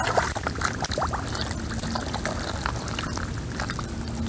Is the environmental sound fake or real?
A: real